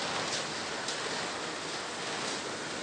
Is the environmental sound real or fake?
real